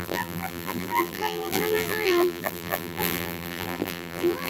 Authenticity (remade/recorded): remade